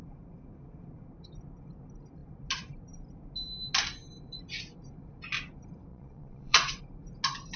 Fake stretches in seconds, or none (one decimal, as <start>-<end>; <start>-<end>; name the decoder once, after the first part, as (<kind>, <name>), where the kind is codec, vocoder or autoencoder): 5.9-6.8 (vocoder, WaveNeXt)